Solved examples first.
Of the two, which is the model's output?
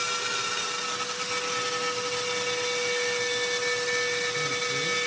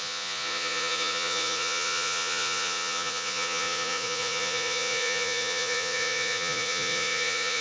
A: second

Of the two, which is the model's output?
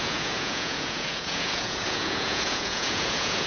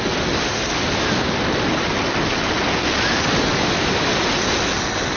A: first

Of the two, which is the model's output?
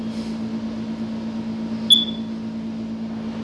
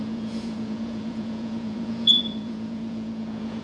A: second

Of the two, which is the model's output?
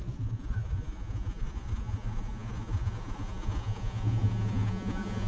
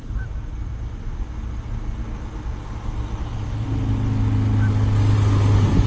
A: first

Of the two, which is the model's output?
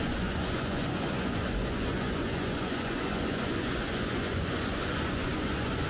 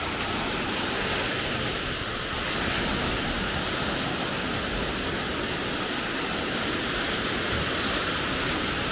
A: first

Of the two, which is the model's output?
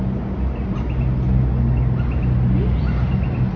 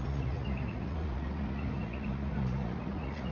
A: second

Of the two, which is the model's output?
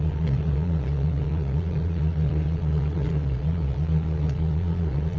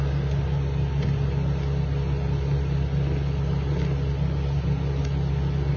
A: first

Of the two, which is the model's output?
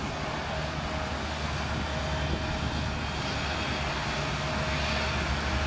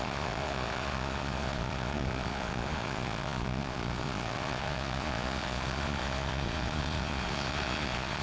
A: second